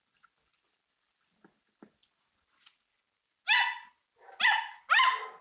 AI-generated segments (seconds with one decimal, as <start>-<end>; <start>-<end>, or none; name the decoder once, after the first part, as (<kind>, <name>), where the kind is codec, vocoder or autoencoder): none